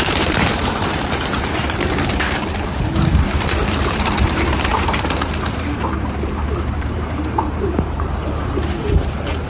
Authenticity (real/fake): fake